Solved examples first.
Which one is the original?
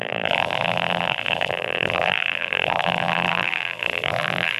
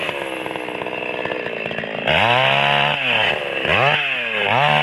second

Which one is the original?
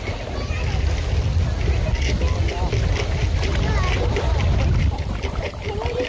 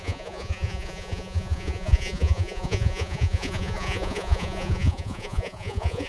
first